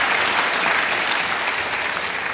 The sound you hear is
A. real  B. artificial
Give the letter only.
A